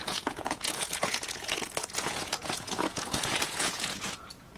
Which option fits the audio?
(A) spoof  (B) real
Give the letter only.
A